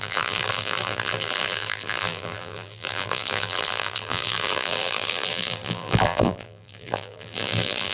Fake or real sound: fake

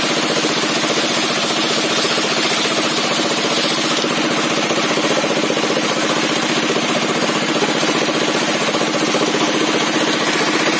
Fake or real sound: real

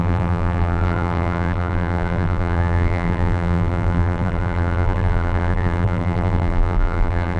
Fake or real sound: fake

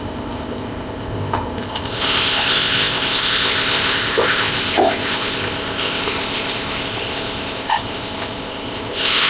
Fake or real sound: fake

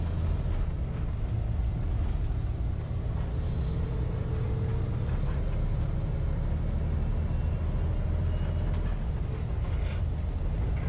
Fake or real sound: real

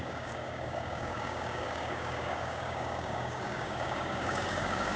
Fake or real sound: fake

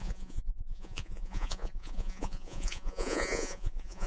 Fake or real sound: fake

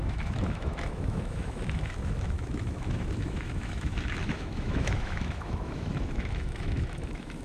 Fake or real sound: fake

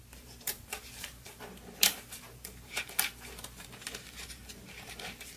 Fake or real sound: fake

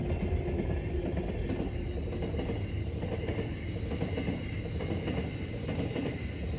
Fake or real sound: real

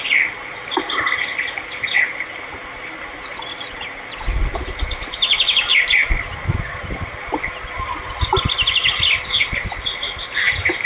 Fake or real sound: real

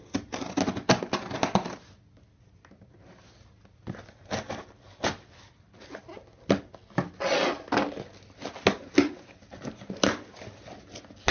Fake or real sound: real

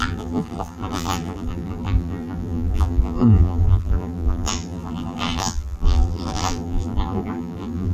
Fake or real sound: fake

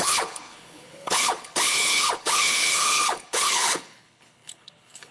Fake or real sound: fake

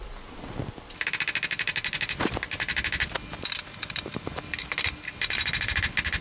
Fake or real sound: real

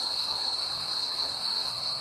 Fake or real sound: fake